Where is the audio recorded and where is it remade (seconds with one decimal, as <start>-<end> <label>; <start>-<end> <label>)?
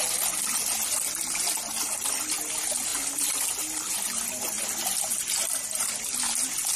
0.0-6.8 recorded